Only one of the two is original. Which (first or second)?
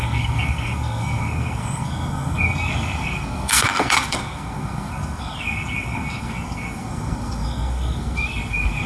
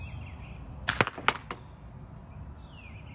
second